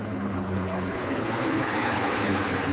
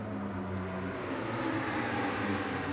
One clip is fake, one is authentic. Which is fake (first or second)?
first